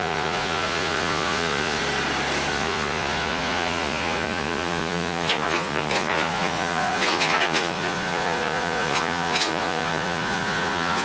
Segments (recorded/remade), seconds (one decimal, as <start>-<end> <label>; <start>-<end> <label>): 0.0-1.8 remade; 1.8-2.5 recorded; 2.5-11.0 remade